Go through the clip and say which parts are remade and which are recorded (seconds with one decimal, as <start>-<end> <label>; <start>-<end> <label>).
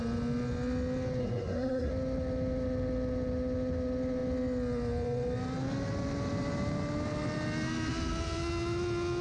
0.0-1.2 recorded; 1.2-1.9 remade; 1.9-9.2 recorded